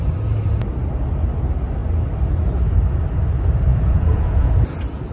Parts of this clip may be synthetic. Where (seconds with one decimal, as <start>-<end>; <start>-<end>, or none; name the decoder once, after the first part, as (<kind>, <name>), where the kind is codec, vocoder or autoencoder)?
3.7-4.5 (vocoder, Vocos)